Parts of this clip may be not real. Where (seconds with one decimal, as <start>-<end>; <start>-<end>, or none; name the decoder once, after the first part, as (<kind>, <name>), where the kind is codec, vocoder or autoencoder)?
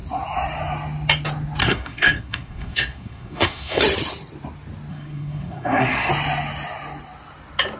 1.6-3.8 (codec, SNAC); 4.9-6.1